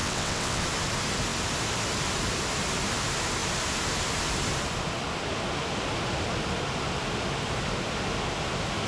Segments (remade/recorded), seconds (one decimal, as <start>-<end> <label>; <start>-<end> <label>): 0.0-0.6 remade; 0.6-8.9 recorded